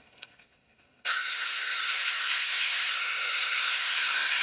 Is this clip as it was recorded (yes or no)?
no